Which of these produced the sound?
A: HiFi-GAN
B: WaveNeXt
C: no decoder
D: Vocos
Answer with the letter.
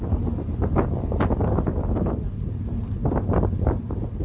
C